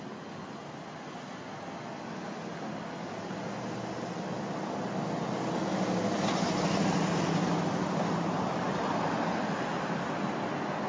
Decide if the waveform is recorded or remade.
recorded